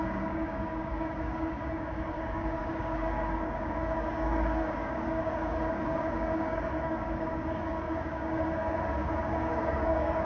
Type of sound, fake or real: fake